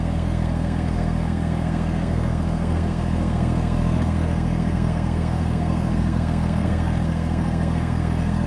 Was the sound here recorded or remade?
remade